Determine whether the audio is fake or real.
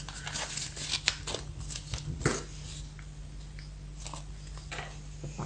real